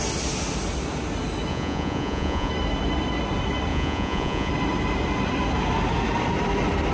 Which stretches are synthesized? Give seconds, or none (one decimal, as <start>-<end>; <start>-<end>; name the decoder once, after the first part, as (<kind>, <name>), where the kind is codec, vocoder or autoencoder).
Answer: 1.5-2.5 (vocoder, Vocos); 3.7-4.5